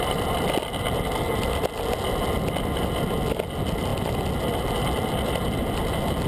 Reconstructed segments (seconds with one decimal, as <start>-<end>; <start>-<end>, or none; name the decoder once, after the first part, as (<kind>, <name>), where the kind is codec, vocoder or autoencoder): none